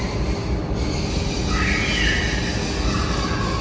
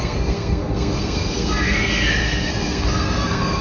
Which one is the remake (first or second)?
second